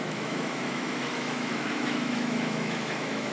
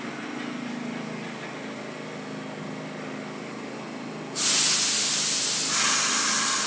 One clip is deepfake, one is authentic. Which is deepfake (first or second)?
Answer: first